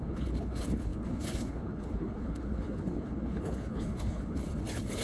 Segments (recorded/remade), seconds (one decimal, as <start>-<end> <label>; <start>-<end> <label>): 0.0-5.0 remade

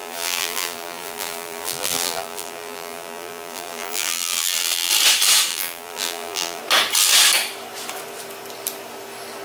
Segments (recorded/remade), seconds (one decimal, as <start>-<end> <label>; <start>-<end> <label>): 0.0-4.9 remade; 4.9-5.5 recorded; 5.5-6.6 remade; 6.6-9.4 recorded

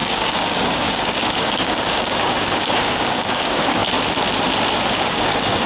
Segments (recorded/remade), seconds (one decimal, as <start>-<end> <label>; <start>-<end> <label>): 0.0-3.8 remade; 3.8-4.9 recorded; 4.9-5.7 remade

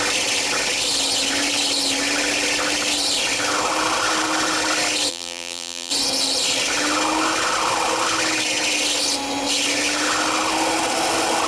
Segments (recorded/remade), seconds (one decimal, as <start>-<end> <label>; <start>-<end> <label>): 0.0-5.1 recorded; 5.1-5.9 remade; 5.9-11.5 recorded

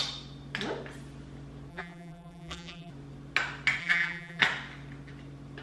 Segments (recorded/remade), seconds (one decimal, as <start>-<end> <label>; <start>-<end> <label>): 0.0-1.7 recorded; 1.7-2.9 remade; 2.9-3.8 recorded; 3.8-4.4 remade; 4.4-5.6 recorded

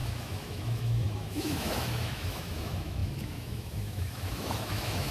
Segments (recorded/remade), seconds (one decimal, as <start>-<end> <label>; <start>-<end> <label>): 0.0-5.1 remade

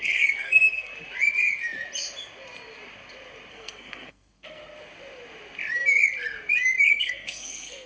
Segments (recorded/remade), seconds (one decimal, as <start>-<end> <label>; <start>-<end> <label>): 0.0-0.9 remade; 0.9-3.5 recorded; 3.5-4.6 remade; 4.6-6.9 recorded; 6.9-7.9 remade

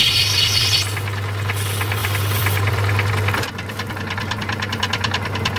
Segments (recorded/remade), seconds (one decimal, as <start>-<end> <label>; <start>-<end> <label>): 0.0-2.0 recorded; 2.0-3.1 remade; 3.1-5.6 recorded